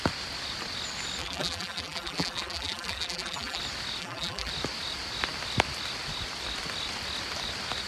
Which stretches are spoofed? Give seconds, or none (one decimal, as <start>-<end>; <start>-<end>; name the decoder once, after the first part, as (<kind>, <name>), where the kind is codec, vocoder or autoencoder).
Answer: 1.2-3.6 (vocoder, BigVGAN v2); 4.0-4.5

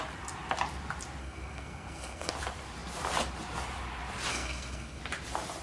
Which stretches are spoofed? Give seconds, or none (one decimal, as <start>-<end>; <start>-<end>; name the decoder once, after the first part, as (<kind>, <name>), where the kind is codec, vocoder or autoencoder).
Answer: 1.2-2.3 (codec, SNAC); 4.3-5.0